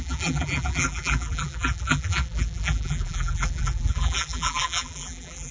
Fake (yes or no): yes